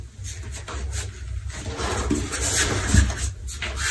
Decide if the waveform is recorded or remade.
recorded